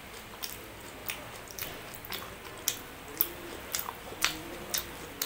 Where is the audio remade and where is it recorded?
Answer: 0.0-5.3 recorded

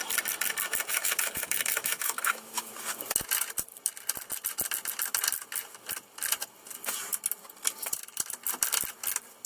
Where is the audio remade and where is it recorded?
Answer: 0.0-0.9 recorded; 0.9-2.7 remade; 2.7-9.5 recorded

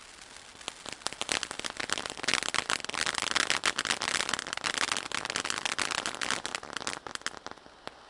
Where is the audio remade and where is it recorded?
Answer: 0.0-8.1 recorded

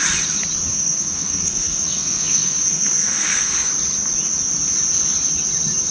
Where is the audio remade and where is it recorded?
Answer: 0.0-0.7 recorded; 0.7-3.7 remade; 3.7-5.9 recorded

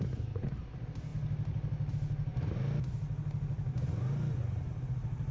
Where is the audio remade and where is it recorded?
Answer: 0.0-5.3 recorded

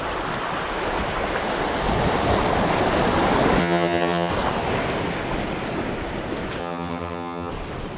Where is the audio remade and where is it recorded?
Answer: 0.0-3.6 recorded; 3.6-4.3 remade; 4.3-6.6 recorded; 6.6-7.5 remade; 7.5-8.0 recorded

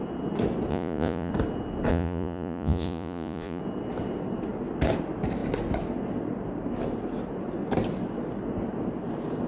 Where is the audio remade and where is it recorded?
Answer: 0.0-0.7 recorded; 0.7-1.3 remade; 1.3-1.9 recorded; 1.9-3.6 remade; 3.6-9.5 recorded